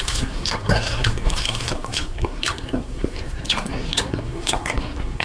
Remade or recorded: remade